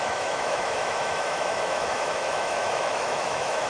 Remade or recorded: remade